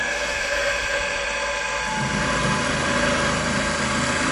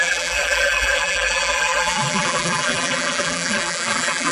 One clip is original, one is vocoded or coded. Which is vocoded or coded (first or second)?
second